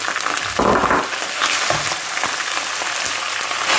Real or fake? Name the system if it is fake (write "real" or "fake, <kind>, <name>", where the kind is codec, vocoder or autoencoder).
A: real